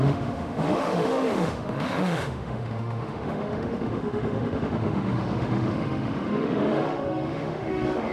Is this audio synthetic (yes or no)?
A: yes